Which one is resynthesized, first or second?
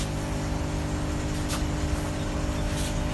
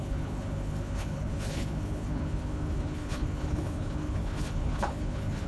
second